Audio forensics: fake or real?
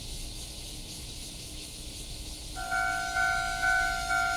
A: fake